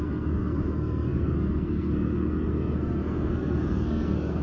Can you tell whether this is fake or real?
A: fake